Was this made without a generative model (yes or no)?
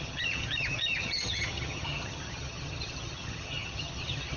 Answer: no